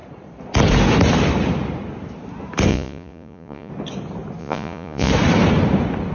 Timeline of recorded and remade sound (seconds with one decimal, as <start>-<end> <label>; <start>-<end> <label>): 0.0-2.7 recorded; 2.7-3.7 remade; 3.7-4.4 recorded; 4.4-5.1 remade; 5.1-6.1 recorded